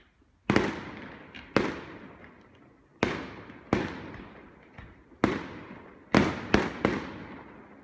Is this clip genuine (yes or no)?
yes